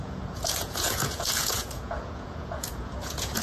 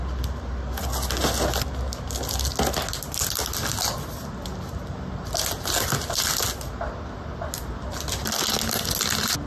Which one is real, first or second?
second